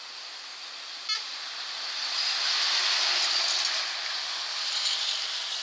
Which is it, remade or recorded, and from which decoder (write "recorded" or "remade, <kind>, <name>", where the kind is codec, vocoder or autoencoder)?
recorded